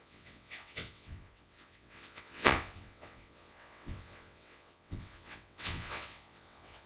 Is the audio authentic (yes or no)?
no